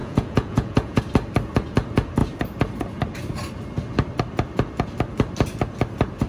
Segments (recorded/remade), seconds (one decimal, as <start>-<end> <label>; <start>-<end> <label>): 0.0-1.0 remade; 1.0-6.3 recorded